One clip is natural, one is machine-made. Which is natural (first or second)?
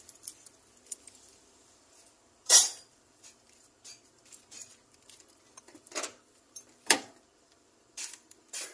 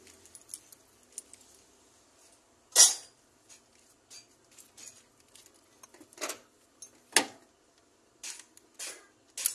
second